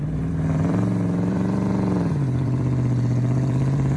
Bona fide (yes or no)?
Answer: no